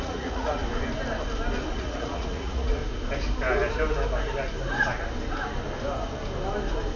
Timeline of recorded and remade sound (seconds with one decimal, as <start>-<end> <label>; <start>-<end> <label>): 0.0-0.6 remade; 0.6-1.7 recorded; 1.7-2.8 remade; 2.8-7.0 recorded